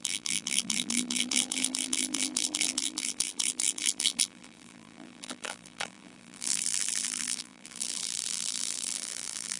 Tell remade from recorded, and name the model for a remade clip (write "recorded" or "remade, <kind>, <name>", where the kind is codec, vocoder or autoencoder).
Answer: remade, vocoder, BigVGAN v2